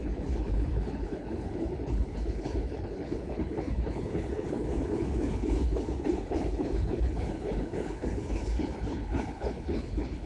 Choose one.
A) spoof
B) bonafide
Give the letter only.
A